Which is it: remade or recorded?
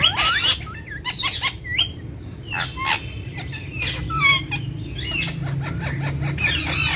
recorded